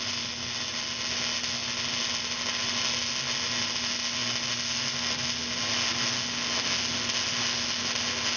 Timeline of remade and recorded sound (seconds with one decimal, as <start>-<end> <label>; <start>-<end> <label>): 0.0-8.4 recorded